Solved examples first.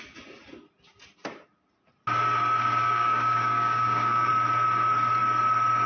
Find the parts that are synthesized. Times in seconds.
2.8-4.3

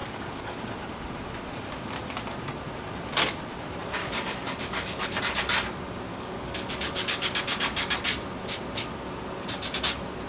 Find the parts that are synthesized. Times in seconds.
0.0-0.6; 4.0-5.2; 6.1-7.4

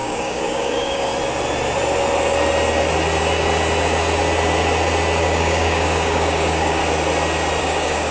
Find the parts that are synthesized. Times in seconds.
0.0-1.1; 5.2-6.8; 7.6-8.1

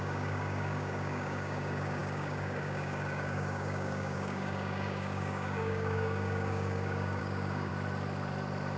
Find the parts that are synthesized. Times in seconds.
0.0-7.7

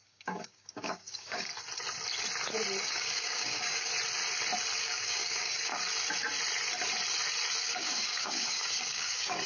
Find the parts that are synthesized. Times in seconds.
0.0-1.5; 2.8-3.9; 4.8-5.7; 7.6-9.5

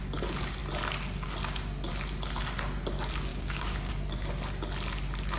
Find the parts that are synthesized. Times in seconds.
3.3-3.9

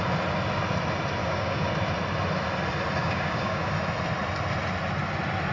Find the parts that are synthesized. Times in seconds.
1.2-1.7; 3.0-3.7

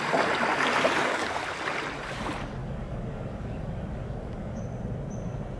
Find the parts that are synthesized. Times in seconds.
1.0-1.5; 2.6-4.6